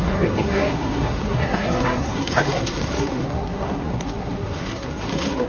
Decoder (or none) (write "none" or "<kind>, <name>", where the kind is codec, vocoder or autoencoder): codec, SNAC